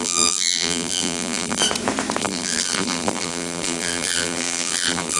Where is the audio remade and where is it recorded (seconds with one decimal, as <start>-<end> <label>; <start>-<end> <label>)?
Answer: 0.0-1.6 remade; 1.6-2.2 recorded; 2.2-5.2 remade

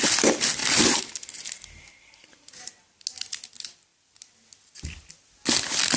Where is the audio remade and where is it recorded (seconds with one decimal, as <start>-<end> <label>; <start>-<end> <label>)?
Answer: 0.0-6.0 recorded

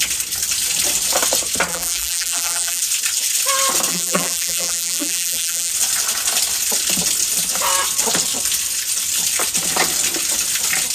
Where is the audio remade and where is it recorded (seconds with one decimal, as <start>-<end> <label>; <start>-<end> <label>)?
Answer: 0.0-1.7 recorded; 1.7-2.8 remade; 2.8-3.9 recorded; 3.9-5.7 remade; 5.7-10.9 recorded

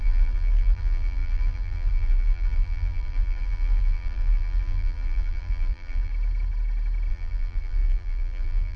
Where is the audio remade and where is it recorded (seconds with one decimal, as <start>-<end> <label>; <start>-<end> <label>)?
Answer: 0.0-6.1 remade; 6.1-7.1 recorded; 7.1-8.8 remade

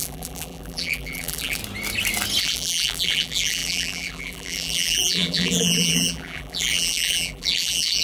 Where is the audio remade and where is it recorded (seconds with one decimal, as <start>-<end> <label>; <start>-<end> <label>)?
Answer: 0.0-1.6 remade; 1.6-2.4 recorded; 2.4-8.0 remade

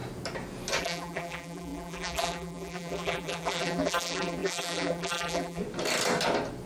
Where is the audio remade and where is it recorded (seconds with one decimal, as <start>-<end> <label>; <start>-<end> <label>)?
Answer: 0.0-0.8 recorded; 0.8-5.6 remade; 5.6-6.7 recorded